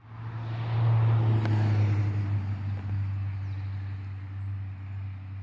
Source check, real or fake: real